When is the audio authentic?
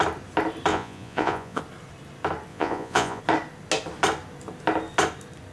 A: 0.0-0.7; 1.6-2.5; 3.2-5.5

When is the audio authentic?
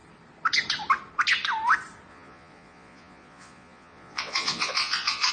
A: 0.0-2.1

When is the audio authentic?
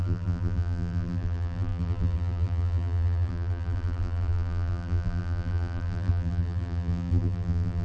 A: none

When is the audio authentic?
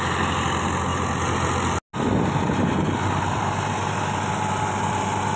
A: 0.0-5.4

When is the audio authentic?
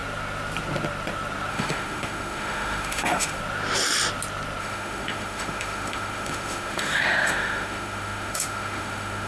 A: 0.0-1.5; 3.4-4.6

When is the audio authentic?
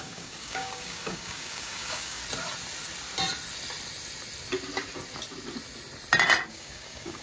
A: 2.2-6.5